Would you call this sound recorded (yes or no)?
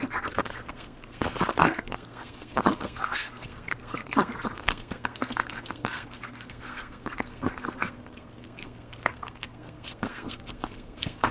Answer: no